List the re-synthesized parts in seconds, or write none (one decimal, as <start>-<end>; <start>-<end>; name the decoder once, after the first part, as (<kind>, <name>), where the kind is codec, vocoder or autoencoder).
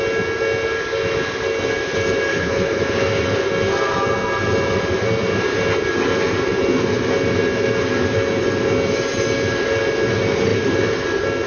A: 2.3-2.8 (codec, HILCodec)